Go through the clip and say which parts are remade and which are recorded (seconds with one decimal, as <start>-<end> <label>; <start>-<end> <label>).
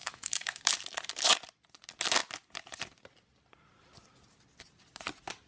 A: 0.0-0.6 remade; 0.6-5.5 recorded